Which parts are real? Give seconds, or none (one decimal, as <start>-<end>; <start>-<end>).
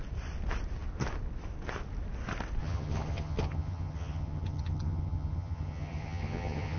0.0-2.6